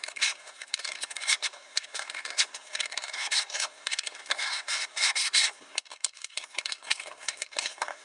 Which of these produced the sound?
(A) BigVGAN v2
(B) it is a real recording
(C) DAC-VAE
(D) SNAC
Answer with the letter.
D